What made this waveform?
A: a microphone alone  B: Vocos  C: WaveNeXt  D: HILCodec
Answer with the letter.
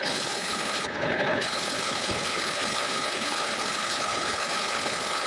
D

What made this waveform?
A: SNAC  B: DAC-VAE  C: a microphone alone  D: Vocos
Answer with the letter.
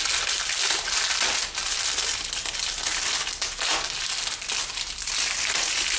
C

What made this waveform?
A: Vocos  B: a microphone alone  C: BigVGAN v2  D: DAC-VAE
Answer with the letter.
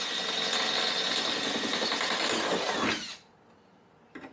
B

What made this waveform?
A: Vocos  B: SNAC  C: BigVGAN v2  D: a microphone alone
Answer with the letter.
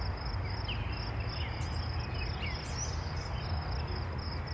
D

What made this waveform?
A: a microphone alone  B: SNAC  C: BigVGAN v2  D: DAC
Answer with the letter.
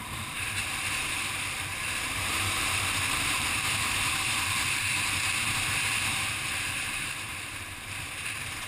C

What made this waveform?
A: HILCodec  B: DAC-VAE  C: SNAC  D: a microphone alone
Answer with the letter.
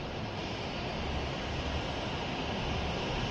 D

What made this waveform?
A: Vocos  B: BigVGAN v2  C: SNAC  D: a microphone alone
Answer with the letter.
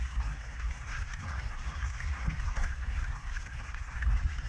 C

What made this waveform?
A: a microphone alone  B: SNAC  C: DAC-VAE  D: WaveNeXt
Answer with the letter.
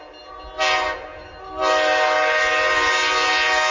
A